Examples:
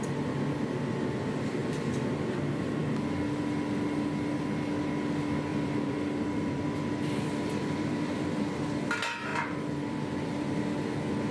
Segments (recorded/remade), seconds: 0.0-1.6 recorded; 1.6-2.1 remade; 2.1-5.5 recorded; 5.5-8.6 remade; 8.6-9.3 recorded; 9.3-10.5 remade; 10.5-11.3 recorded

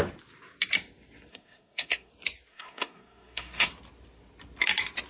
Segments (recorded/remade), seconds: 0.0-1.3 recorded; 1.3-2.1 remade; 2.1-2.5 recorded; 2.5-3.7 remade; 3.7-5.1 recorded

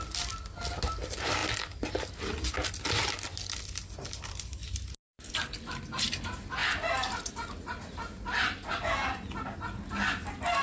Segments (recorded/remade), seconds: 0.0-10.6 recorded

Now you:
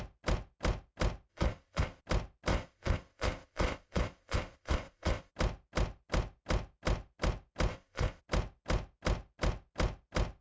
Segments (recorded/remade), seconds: 0.0-1.3 recorded; 1.3-2.0 remade; 2.0-2.5 recorded; 2.5-5.3 remade; 5.3-7.7 recorded; 7.7-8.2 remade; 8.2-10.4 recorded

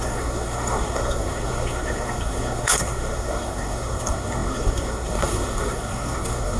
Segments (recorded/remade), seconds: 0.0-6.6 remade